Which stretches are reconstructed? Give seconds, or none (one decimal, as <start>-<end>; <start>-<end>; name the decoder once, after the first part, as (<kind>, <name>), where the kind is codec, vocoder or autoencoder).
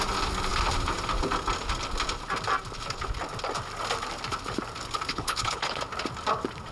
5.1-5.8 (codec, HILCodec)